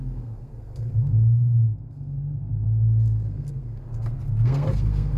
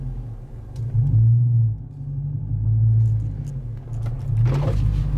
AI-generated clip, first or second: first